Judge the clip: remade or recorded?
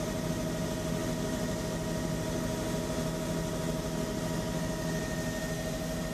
recorded